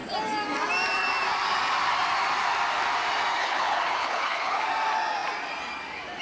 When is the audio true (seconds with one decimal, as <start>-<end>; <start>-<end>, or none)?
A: 0.0-3.4; 4.6-6.2